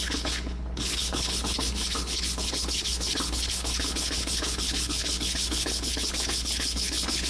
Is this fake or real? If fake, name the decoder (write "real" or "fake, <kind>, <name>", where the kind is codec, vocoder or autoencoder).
fake, codec, HILCodec